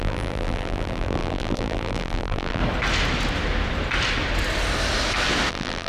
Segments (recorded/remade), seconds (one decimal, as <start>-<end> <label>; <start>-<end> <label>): 0.0-2.6 remade; 2.6-5.5 recorded; 5.5-5.9 remade